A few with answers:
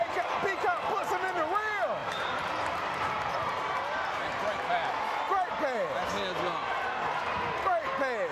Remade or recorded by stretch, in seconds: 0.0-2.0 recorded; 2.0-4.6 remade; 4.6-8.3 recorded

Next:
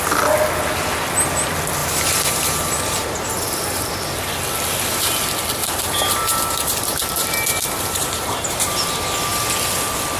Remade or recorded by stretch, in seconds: 0.0-1.8 recorded; 1.8-4.0 remade; 4.0-5.6 recorded; 5.6-8.9 remade; 8.9-10.2 recorded

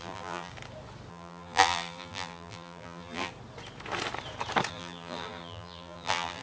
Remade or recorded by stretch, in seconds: 0.0-0.5 remade; 0.5-1.1 recorded; 1.1-3.3 remade; 3.3-4.7 recorded; 4.7-6.4 remade

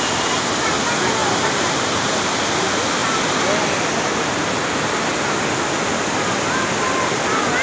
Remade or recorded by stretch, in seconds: 0.0-1.2 recorded; 1.2-2.1 remade; 2.1-7.6 recorded